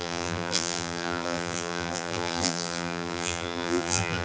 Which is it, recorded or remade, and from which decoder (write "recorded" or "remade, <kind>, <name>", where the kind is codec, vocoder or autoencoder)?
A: remade, vocoder, BigVGAN v2